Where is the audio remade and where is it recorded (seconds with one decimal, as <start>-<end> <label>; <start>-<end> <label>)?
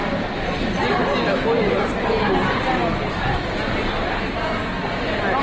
0.0-5.4 recorded